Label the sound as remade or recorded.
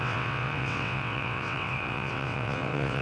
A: remade